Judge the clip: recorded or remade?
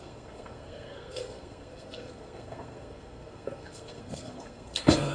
remade